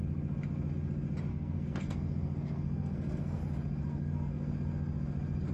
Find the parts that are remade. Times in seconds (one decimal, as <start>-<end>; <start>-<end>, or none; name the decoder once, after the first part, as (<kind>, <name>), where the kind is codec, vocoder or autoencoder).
1.3-3.4 (codec, SNAC); 3.9-4.5